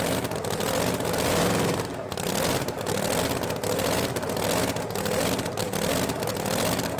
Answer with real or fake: real